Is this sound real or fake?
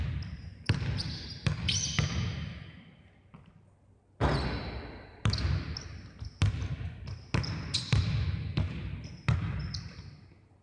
real